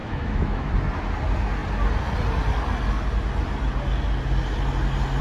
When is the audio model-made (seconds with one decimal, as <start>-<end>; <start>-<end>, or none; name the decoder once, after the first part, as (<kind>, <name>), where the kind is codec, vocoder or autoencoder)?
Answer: 0.0-0.7 (autoencoder, DAC-VAE)